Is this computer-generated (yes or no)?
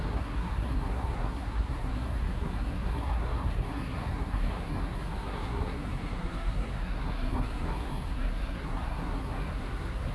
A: yes